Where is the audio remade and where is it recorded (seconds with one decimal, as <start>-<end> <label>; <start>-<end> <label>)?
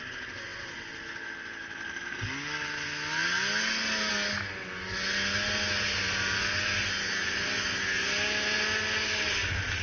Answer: 0.0-9.8 recorded